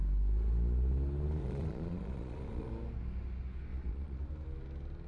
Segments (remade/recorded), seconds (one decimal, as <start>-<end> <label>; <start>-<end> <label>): 0.0-1.4 recorded; 1.4-2.7 remade; 2.7-3.7 recorded; 3.7-4.2 remade; 4.2-5.1 recorded